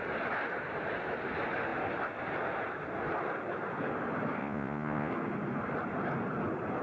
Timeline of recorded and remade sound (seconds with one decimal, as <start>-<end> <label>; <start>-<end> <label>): 0.0-4.4 recorded; 4.4-5.1 remade; 5.1-6.8 recorded